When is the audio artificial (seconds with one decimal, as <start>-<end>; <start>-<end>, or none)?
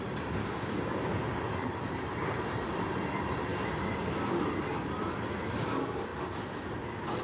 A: 0.4-1.2; 3.5-4.4